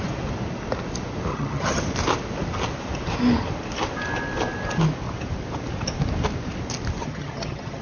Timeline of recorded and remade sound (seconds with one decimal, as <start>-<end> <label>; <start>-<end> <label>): 0.0-1.3 recorded; 1.3-1.8 remade; 1.8-7.0 recorded; 7.0-7.8 remade